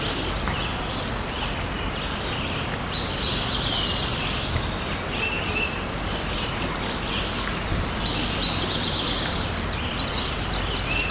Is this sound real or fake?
real